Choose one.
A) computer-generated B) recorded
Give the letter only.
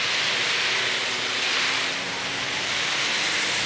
B